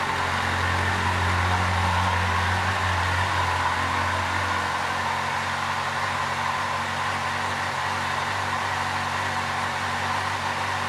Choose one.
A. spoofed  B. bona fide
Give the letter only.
B